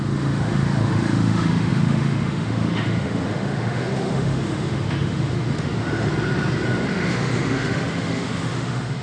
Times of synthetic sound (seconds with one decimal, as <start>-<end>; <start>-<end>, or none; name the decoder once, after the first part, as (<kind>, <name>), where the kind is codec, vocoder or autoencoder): 0.0-6.1 (autoencoder, DAC-VAE); 6.9-9.0

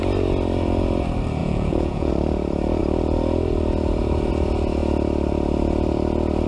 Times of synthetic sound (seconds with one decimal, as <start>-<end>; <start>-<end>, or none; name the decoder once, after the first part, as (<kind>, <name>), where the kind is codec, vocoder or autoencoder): 1.4-2.1 (vocoder, Vocos)

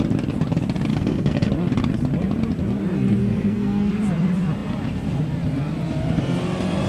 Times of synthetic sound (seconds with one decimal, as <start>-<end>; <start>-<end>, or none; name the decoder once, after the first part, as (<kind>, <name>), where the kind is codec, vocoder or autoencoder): 0.9-1.5 (codec, SNAC); 3.2-3.9

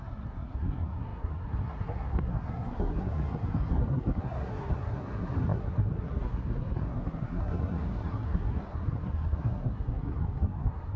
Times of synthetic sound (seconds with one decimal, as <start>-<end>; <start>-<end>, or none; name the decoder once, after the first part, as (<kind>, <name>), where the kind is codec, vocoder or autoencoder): 0.0-11.0 (codec, SNAC)

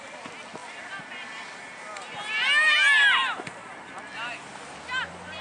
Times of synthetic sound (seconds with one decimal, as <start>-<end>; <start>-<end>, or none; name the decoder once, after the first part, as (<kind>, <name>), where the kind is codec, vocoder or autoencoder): none

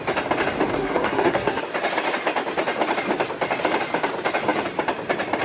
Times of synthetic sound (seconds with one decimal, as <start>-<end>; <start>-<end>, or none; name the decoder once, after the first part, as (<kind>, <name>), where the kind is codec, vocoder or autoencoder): 0.7-1.6 (codec, SNAC)

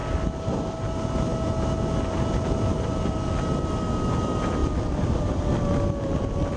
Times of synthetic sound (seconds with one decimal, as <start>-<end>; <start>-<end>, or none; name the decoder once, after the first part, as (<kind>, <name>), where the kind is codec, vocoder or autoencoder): none